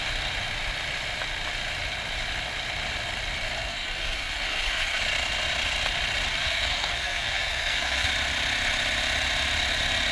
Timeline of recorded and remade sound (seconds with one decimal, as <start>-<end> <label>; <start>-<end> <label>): 0.0-3.7 recorded; 3.7-5.0 remade; 5.0-6.3 recorded; 6.3-8.1 remade; 8.1-10.1 recorded